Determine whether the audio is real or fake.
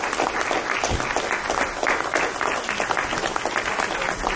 real